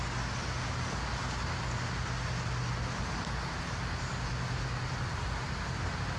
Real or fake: real